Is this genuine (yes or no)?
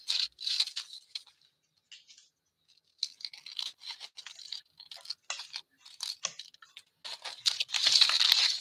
yes